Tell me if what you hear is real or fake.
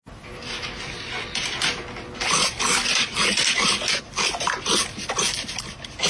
real